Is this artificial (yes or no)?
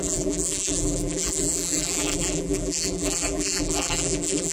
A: yes